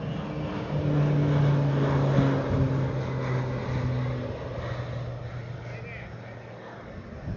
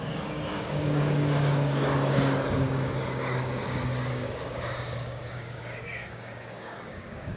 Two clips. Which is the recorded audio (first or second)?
first